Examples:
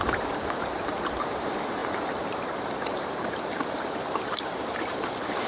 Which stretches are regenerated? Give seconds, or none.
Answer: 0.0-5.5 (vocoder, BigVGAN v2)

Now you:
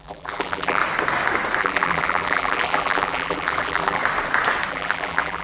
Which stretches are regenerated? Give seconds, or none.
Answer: 0.0-0.8 (vocoder, BigVGAN v2); 1.6-4.0; 4.7-5.4